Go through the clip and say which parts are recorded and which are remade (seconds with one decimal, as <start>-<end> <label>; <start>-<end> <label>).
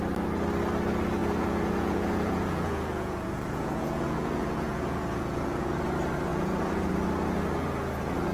0.0-1.2 recorded; 1.2-5.8 remade; 5.8-6.3 recorded; 6.3-6.9 remade; 6.9-8.3 recorded